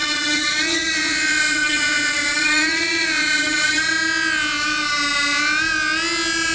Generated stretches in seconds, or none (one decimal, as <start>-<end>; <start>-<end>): 0.0-3.9